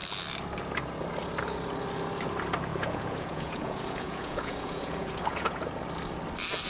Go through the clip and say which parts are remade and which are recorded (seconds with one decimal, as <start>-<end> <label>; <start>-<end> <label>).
0.0-2.7 recorded; 2.7-5.7 remade; 5.7-6.7 recorded